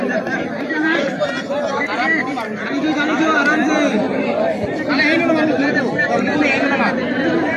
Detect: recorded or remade remade